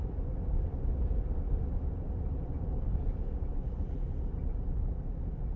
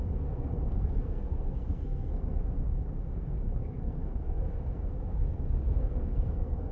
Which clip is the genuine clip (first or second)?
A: first